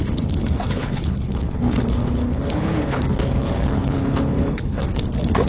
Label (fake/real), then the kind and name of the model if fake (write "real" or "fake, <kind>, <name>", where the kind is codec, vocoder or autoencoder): fake, codec, HILCodec